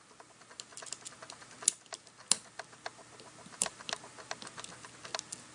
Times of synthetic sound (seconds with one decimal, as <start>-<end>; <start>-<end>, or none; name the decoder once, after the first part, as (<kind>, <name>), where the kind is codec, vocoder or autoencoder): none